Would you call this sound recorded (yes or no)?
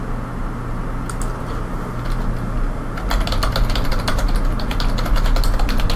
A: yes